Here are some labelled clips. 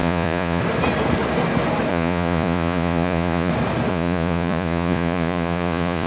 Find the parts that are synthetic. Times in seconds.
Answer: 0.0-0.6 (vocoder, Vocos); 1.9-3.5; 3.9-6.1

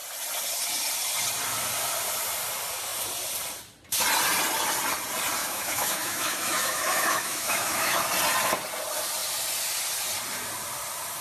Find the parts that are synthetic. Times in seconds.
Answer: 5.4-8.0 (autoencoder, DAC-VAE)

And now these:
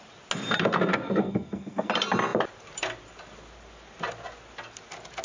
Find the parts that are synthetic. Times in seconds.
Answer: 0.9-1.9 (codec, SNAC)

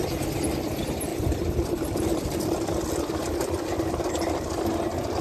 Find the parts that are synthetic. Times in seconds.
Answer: none

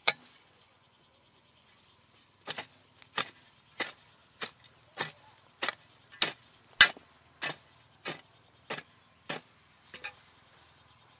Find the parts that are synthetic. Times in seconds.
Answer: 0.0-1.8 (vocoder, Vocos)

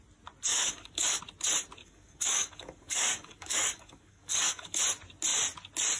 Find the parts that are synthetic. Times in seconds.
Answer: 0.5-1.2 (codec, DAC); 1.8-4.8

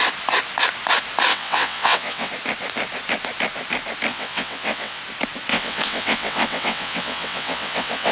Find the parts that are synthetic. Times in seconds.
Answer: 1.3-2.3 (vocoder, WaveNeXt); 4.1-5.0; 5.5-8.1